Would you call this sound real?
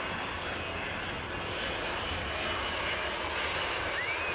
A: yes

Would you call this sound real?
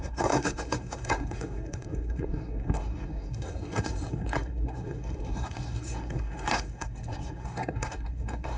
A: no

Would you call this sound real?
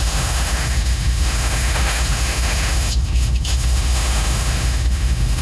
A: no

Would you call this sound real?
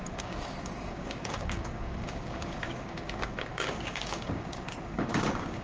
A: no